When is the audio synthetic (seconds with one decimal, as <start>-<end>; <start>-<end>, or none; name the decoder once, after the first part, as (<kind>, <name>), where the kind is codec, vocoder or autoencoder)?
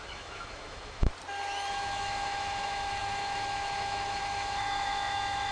0.0-1.1 (autoencoder, DAC-VAE); 1.7-5.5